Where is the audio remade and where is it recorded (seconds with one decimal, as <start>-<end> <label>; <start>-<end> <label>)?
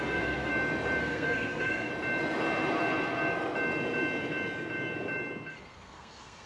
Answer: 0.0-0.5 remade; 0.5-1.0 recorded; 1.0-1.9 remade; 1.9-5.5 recorded; 5.5-6.5 remade